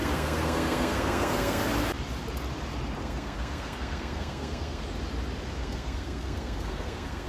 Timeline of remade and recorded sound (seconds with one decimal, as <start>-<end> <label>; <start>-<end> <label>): 0.0-1.6 remade; 1.6-3.0 recorded; 3.0-4.8 remade; 4.8-5.6 recorded; 5.6-7.3 remade